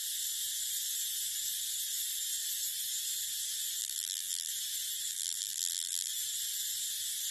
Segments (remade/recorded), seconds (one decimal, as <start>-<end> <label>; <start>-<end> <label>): 0.0-3.8 recorded; 3.8-4.5 remade; 4.5-5.1 recorded; 5.1-6.1 remade; 6.1-7.3 recorded